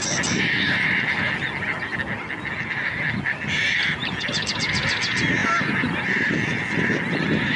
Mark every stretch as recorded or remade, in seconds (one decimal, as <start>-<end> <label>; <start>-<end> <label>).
0.0-4.5 remade; 4.5-5.4 recorded; 5.4-7.6 remade